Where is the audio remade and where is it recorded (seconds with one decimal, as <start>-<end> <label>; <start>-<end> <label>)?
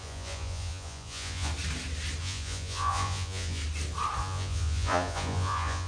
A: 0.0-1.5 remade; 1.5-2.2 recorded; 2.2-3.6 remade; 3.6-4.2 recorded; 4.2-5.9 remade